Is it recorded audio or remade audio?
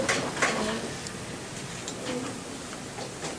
recorded